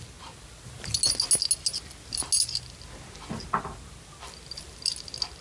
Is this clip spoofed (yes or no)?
no